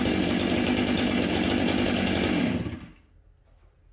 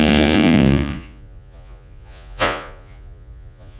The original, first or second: first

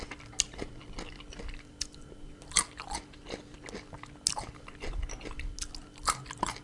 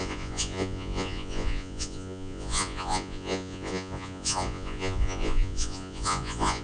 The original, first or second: first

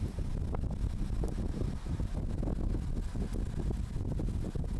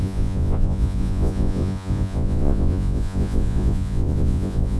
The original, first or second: first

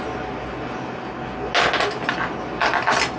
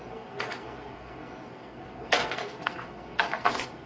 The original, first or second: first